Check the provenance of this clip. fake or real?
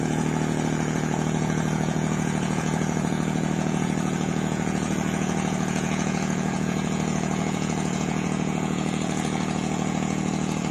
fake